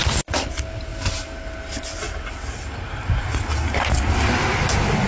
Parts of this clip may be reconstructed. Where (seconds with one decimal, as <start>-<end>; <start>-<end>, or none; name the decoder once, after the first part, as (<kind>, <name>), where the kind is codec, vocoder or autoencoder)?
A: none